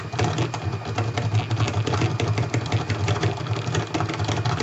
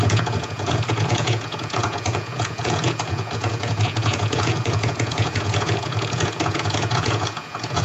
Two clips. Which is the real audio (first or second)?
first